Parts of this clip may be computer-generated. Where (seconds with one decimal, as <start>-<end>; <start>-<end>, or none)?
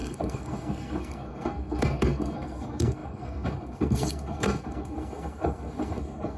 0.0-6.4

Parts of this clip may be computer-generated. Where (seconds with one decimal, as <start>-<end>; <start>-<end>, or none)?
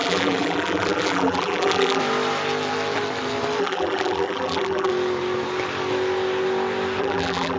0.0-2.0; 3.6-4.9; 7.0-7.6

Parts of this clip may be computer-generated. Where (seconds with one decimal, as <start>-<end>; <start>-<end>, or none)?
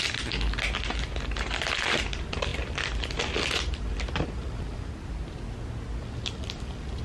none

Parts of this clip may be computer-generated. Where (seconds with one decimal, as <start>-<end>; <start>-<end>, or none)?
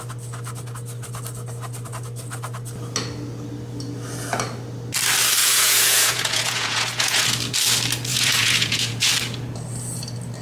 5.4-7.2; 8.1-9.1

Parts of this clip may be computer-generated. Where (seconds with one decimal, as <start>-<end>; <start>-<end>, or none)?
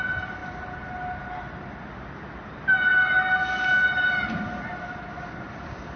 none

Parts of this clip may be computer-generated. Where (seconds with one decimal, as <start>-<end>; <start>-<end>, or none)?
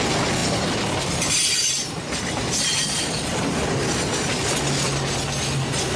none